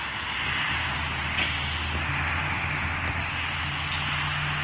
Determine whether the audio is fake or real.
real